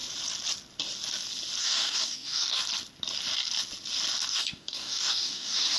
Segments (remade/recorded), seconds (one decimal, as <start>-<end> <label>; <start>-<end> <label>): 0.0-1.6 recorded; 1.6-2.6 remade; 2.6-4.3 recorded; 4.3-5.8 remade